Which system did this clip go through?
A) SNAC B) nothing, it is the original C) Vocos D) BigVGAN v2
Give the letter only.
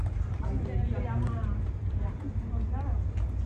B